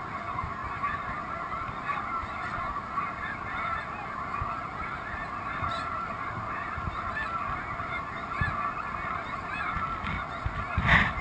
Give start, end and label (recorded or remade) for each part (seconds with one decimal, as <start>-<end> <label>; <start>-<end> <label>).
0.0-11.2 recorded